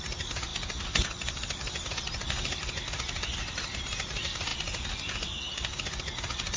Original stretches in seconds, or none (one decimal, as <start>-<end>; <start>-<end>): 0.0-6.6